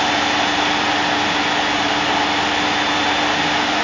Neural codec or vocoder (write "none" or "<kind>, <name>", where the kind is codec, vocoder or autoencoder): none